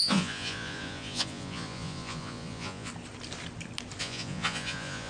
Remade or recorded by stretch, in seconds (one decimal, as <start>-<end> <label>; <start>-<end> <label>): 0.0-2.9 remade; 2.9-4.0 recorded; 4.0-5.1 remade